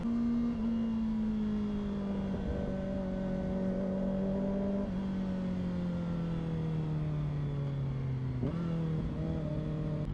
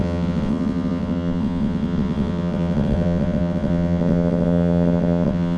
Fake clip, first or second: second